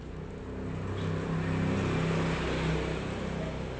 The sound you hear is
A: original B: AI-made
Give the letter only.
A